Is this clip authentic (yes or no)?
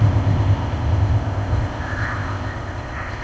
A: no